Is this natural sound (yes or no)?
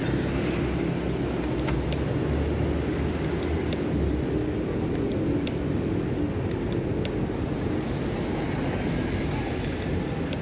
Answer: yes